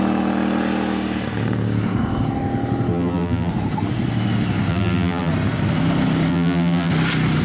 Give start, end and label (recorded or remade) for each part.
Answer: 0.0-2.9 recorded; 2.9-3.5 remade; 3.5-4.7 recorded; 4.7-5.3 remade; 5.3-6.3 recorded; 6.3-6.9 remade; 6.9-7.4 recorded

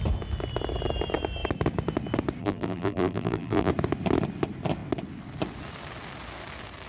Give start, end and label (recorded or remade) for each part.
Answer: 0.0-2.4 recorded; 2.4-3.7 remade; 3.7-6.9 recorded

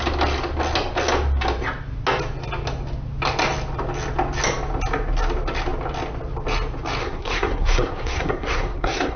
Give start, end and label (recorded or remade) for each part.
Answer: 0.0-7.0 recorded; 7.0-9.2 remade

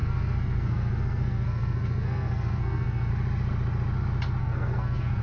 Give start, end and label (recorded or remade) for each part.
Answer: 0.0-3.1 remade; 3.1-4.4 recorded; 4.4-5.2 remade

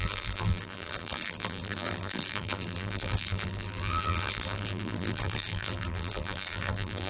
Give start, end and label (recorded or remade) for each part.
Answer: 0.0-7.1 remade

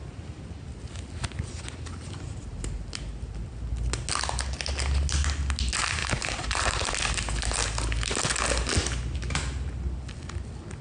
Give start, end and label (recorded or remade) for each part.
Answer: 0.0-6.0 recorded; 6.0-6.9 remade; 6.9-10.8 recorded

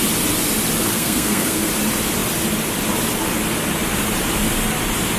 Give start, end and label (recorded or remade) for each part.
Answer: 0.0-0.9 recorded; 0.9-1.7 remade; 1.7-5.2 recorded

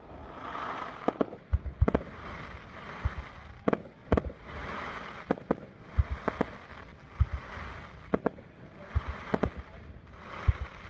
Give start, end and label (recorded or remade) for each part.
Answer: 0.0-10.9 recorded